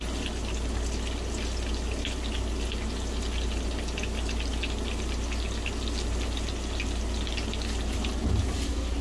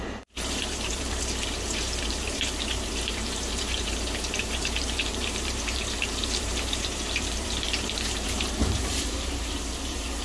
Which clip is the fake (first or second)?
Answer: second